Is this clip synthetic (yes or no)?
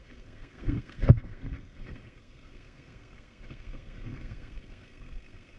yes